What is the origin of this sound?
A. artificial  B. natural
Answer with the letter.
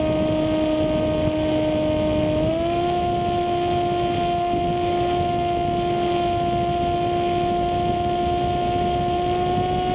B